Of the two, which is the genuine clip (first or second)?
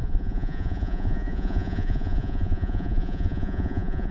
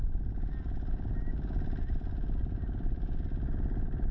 second